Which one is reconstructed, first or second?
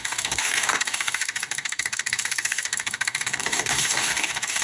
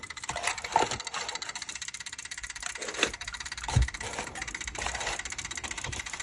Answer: first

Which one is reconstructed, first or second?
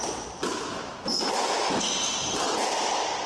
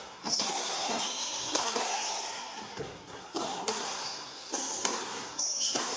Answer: second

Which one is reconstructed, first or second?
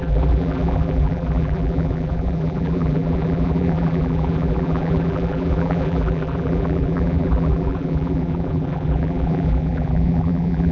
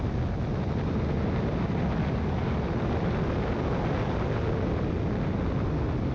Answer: first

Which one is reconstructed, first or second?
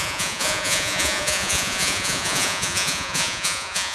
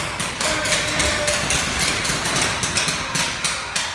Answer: first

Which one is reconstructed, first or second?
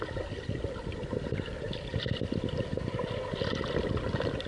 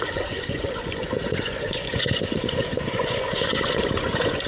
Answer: second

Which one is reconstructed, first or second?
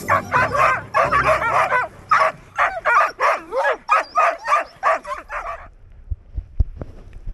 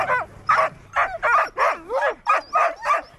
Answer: first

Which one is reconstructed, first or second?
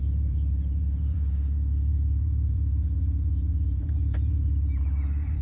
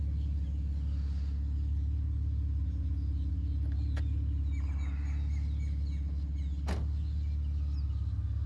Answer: first